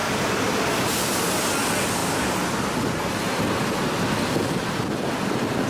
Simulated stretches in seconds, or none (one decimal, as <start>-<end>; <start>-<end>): 0.0-1.2

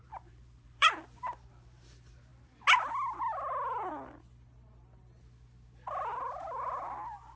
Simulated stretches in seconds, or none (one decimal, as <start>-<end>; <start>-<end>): 0.0-0.9; 6.1-6.8